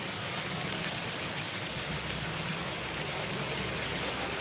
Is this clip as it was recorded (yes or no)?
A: yes